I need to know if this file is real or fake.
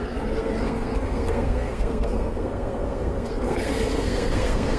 fake